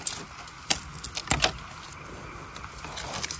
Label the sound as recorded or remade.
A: recorded